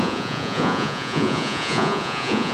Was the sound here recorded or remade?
remade